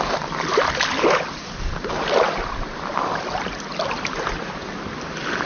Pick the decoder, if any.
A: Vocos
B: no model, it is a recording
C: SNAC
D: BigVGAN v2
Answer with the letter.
B